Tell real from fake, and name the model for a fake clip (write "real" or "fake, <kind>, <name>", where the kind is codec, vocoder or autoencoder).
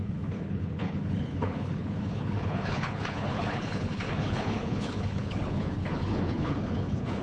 fake, codec, HILCodec